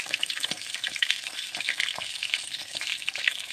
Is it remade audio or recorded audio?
remade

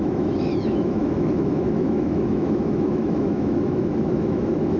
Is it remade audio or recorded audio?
remade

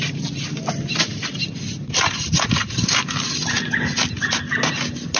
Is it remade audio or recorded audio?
recorded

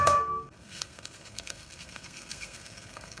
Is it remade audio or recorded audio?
remade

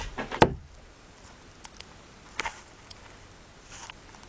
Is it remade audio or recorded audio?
recorded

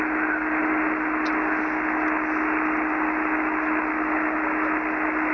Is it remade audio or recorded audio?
recorded